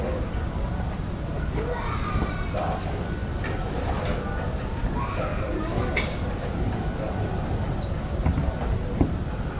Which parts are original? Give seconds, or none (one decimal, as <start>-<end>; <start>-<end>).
0.0-1.8; 2.6-9.6

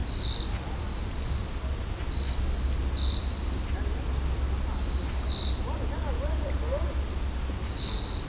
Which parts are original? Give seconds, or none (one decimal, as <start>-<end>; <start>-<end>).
0.0-8.3

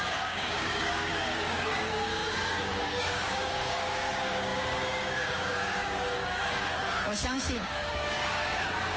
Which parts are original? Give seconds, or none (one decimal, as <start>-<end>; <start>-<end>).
none

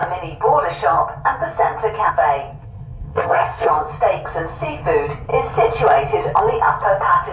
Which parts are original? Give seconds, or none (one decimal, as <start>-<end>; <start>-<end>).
0.0-2.6; 3.7-7.3

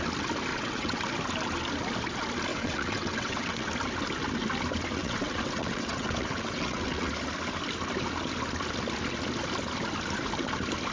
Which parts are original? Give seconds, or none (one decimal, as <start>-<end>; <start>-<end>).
0.0-0.5; 1.0-2.5; 3.7-5.0; 7.1-10.9